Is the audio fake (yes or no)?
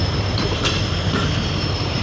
yes